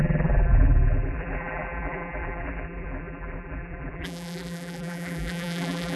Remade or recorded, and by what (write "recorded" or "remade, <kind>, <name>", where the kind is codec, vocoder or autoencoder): remade, vocoder, BigVGAN v2